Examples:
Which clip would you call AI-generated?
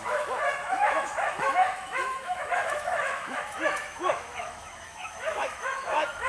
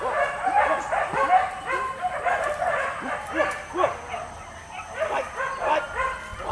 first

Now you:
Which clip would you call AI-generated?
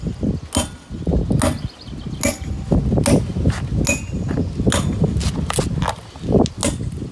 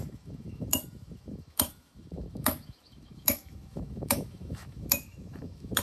second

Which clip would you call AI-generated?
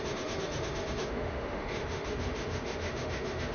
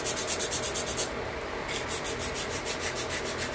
first